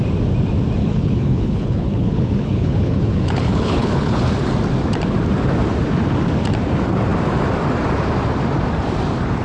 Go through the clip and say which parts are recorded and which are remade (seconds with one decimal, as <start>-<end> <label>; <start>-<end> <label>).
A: 0.0-0.8 recorded; 0.8-4.2 remade; 4.2-9.4 recorded